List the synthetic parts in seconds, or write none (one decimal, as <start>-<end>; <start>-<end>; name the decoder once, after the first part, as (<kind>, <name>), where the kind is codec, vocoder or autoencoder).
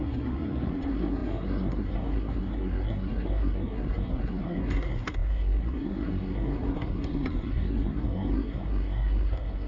0.0-9.7 (codec, SNAC)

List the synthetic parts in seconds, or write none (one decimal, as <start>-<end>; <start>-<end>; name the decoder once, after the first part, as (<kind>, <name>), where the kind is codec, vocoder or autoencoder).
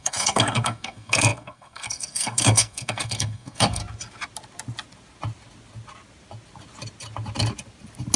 0.0-3.8 (codec, SNAC)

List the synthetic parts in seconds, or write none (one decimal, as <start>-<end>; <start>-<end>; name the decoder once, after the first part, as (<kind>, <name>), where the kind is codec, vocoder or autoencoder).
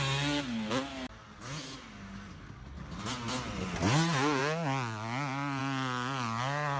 none